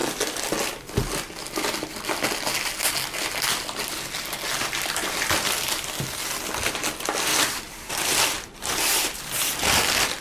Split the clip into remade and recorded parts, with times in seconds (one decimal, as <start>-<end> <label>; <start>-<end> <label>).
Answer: 0.0-3.6 recorded; 3.6-10.2 remade